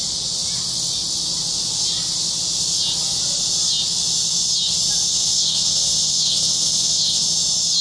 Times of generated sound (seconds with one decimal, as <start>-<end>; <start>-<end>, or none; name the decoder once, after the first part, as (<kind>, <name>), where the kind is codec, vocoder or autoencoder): 5.1-7.2 (vocoder, WaveNeXt)